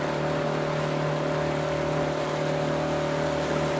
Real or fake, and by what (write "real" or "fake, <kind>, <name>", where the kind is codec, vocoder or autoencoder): real